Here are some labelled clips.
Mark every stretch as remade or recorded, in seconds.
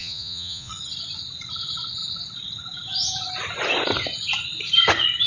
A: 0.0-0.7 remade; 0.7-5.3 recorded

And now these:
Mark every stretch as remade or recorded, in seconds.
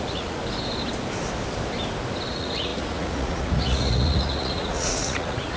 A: 0.0-0.4 remade; 0.4-2.3 recorded; 2.3-5.6 remade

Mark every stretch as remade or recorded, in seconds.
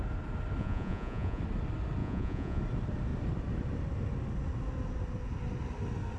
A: 0.0-0.6 recorded; 0.6-1.4 remade; 1.4-2.0 recorded; 2.0-2.6 remade; 2.6-6.2 recorded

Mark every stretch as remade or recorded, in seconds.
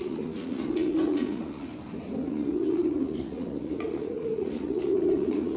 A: 0.0-1.7 remade; 1.7-2.2 recorded; 2.2-5.6 remade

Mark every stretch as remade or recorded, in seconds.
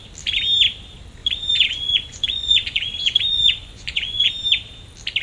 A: 0.0-1.2 recorded; 1.2-4.3 remade; 4.3-5.2 recorded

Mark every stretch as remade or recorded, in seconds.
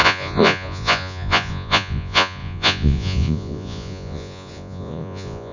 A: 0.0-5.5 remade